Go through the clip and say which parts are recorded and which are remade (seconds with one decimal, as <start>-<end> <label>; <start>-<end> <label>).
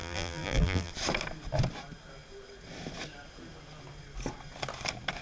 0.0-0.9 remade; 0.9-5.2 recorded